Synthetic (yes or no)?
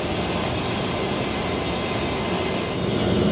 no